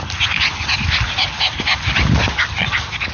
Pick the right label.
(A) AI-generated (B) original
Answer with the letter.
B